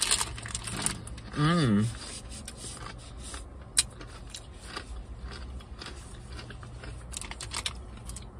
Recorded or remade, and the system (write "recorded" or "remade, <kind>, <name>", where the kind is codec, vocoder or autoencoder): recorded